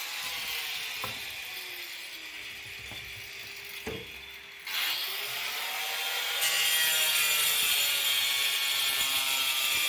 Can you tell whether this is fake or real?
real